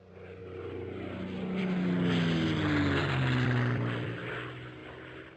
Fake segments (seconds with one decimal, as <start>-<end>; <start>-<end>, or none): 0.4-1.6; 3.0-4.3; 4.8-5.4